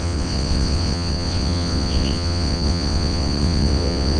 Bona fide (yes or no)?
no